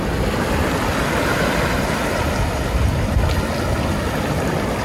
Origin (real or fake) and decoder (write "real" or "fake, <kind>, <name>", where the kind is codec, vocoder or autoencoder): real